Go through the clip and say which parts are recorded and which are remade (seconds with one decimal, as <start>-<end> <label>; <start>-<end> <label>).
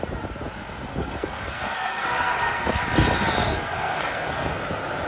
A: 0.0-0.9 recorded; 0.9-2.8 remade; 2.8-3.5 recorded; 3.5-4.6 remade; 4.6-5.1 recorded